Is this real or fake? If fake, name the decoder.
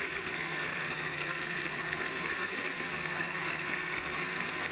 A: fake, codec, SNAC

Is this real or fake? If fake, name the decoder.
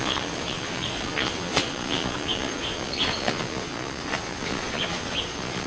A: fake, vocoder, Vocos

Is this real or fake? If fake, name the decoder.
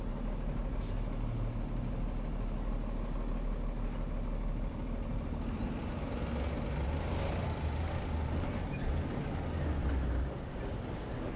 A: real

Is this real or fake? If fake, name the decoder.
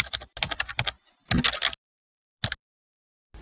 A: real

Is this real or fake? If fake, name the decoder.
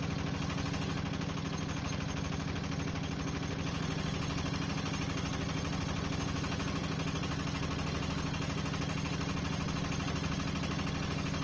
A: real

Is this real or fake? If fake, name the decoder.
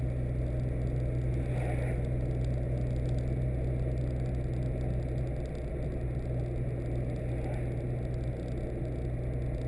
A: real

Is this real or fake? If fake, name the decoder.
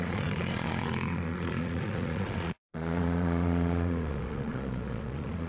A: fake, vocoder, Vocos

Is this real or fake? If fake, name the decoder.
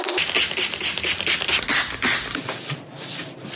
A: fake, vocoder, BigVGAN v2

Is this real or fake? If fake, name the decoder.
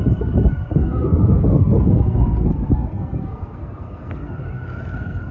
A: fake, codec, SNAC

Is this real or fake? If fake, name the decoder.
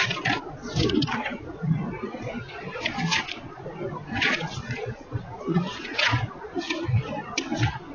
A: fake, vocoder, Vocos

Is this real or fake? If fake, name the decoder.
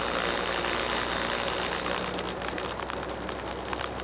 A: real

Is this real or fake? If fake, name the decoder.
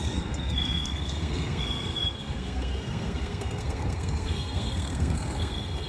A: fake, codec, SNAC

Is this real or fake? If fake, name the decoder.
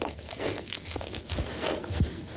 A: fake, codec, SNAC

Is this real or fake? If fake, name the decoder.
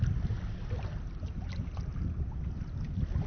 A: real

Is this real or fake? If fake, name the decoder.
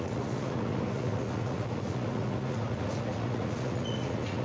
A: fake, vocoder, Vocos